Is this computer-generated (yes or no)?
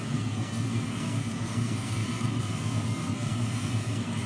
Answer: yes